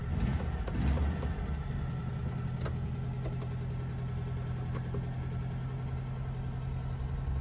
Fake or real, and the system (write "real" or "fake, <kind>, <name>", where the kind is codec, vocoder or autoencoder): real